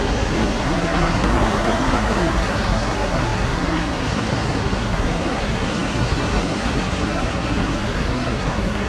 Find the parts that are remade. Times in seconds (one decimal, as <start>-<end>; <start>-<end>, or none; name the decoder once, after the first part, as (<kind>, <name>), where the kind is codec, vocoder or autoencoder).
0.0-8.9 (codec, SNAC)

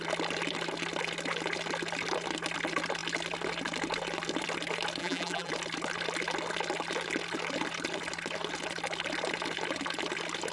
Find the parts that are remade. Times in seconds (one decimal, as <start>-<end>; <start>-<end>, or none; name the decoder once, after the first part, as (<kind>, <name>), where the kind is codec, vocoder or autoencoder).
5.0-5.5 (vocoder, BigVGAN v2)